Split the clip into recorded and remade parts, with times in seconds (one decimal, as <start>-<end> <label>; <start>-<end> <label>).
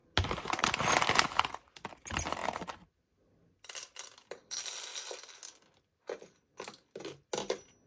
0.0-7.9 recorded